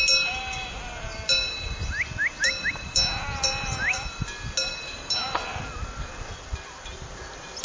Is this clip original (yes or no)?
yes